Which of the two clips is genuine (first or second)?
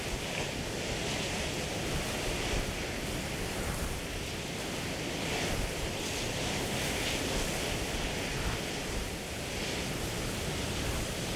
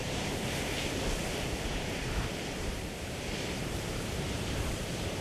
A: first